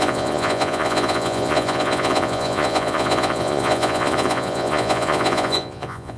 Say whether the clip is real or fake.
fake